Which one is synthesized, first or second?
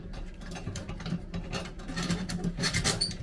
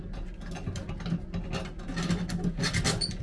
first